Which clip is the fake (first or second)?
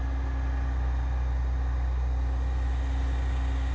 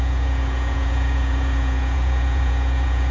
second